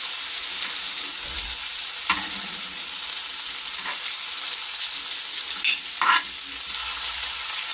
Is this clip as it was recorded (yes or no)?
yes